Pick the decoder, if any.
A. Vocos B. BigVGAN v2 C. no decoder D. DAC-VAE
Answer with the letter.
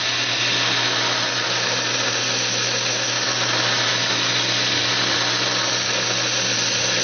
C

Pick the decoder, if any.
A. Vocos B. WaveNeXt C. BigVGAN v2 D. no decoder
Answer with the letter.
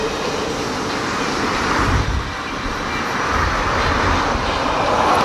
D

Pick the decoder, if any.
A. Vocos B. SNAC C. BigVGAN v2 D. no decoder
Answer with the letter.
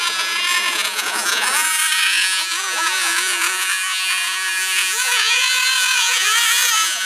A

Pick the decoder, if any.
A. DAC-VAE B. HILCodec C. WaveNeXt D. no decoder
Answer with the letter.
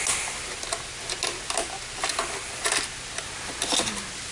D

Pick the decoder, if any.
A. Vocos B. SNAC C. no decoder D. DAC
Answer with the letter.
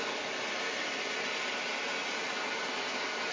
C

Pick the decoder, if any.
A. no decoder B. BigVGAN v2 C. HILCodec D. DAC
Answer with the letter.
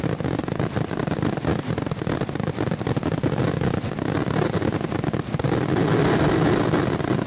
A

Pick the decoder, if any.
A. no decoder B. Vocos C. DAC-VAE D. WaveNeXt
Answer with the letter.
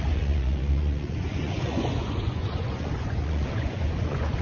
B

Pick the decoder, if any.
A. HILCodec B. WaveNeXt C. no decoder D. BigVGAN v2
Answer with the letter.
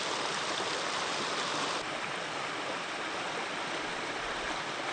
C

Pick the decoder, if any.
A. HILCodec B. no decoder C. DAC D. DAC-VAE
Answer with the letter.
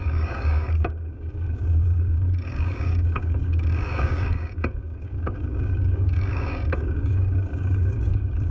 C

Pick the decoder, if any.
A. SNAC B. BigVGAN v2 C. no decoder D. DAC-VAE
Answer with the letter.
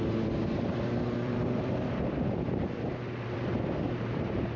B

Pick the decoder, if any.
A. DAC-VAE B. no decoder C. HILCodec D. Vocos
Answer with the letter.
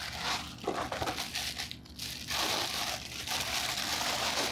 B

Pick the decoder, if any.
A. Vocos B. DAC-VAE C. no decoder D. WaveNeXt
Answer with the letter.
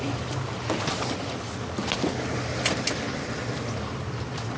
C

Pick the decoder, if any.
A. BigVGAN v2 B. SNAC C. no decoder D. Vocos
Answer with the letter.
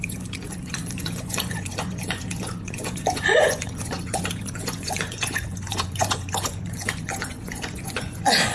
D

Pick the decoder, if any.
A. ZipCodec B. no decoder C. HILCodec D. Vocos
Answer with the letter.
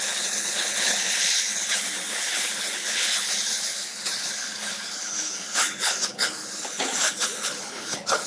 C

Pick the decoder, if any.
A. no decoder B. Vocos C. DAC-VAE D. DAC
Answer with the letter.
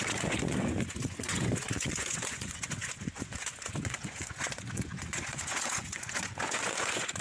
B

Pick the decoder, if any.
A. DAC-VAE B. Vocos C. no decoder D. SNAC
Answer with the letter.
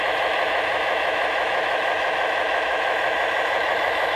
A